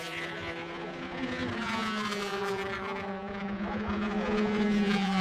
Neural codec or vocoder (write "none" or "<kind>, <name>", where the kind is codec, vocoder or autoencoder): vocoder, Vocos